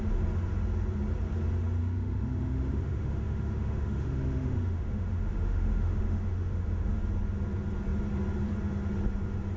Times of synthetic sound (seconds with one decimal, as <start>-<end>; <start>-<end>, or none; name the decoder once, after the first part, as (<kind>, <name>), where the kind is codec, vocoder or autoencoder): 1.8-7.0 (autoencoder, DAC-VAE)